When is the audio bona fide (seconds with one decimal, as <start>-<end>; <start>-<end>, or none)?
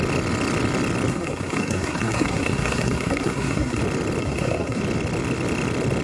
0.0-1.1; 3.8-4.2; 4.8-6.0